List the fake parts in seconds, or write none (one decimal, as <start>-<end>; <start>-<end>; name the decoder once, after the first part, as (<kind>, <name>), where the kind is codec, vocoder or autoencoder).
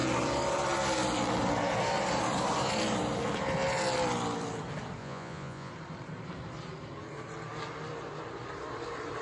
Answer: 5.0-5.7 (vocoder, Vocos)